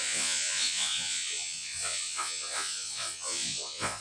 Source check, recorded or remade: remade